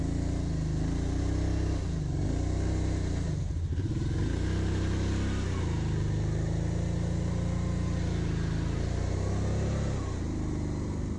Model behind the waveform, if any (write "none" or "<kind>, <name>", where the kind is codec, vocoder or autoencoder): none